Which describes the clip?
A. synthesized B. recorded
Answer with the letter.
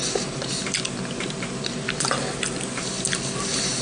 B